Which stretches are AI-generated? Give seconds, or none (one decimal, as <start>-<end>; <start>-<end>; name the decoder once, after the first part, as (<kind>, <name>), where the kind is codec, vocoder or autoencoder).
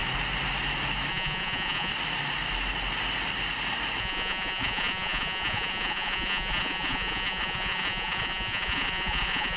1.1-1.9 (vocoder, Vocos); 4.0-9.6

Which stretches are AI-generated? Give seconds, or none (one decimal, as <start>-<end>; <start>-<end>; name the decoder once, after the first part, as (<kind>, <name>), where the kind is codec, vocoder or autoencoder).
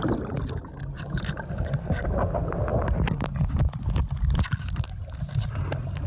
none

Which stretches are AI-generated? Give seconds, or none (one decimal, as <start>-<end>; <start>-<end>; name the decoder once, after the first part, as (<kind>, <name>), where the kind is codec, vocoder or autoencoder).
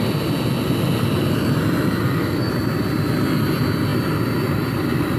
2.0-2.5 (codec, SNAC)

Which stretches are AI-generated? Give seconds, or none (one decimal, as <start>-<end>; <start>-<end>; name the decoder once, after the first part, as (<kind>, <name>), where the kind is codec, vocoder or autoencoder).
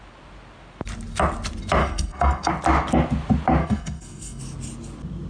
1.8-2.5 (codec, SNAC); 3.6-4.4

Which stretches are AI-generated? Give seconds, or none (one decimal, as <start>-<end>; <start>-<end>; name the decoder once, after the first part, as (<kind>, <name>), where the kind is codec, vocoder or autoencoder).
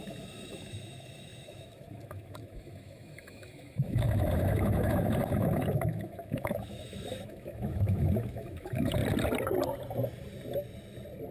0.0-9.0 (autoencoder, DAC-VAE)